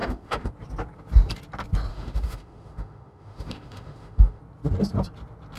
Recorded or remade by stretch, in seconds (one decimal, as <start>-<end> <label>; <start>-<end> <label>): 0.0-0.5 remade; 0.5-1.9 recorded; 1.9-4.4 remade; 4.4-5.6 recorded